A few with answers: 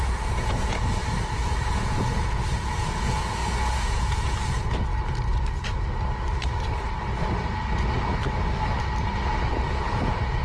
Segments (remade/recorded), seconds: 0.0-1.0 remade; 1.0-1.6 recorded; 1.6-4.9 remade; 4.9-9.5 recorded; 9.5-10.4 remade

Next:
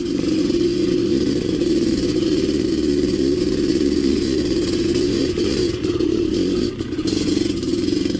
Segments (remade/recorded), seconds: 0.0-8.2 remade

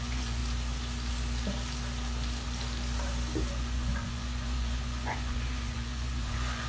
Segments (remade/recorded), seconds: 0.0-0.4 remade; 0.4-3.5 recorded; 3.5-6.7 remade

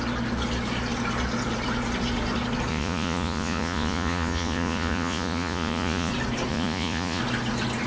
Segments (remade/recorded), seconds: 0.0-2.7 recorded; 2.7-6.1 remade; 6.1-6.5 recorded; 6.5-7.2 remade; 7.2-7.9 recorded

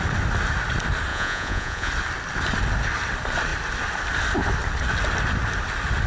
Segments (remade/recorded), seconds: 0.0-1.1 recorded; 1.1-1.9 remade; 1.9-6.1 recorded

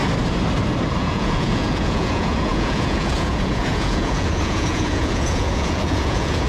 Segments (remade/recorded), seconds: 0.0-1.0 recorded; 1.0-6.5 remade